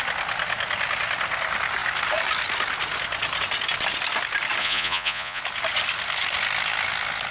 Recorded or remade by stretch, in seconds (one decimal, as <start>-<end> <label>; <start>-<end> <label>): 0.0-4.6 recorded; 4.6-5.4 remade; 5.4-7.3 recorded